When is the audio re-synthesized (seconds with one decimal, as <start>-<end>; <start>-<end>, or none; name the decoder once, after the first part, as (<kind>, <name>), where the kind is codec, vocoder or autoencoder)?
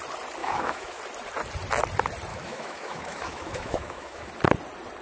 0.4-1.0 (autoencoder, DAC-VAE); 2.3-4.3